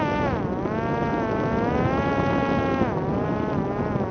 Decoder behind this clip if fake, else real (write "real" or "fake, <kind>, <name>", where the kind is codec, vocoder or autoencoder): real